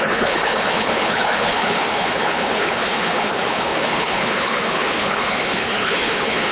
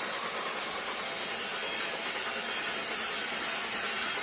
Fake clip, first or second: first